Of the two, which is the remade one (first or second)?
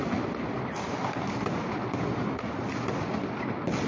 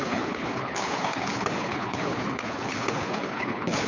second